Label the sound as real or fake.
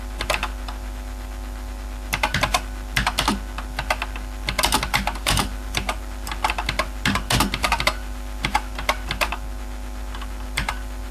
real